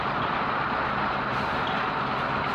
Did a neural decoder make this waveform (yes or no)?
no